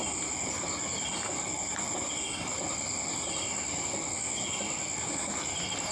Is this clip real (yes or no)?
yes